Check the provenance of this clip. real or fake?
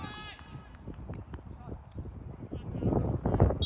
real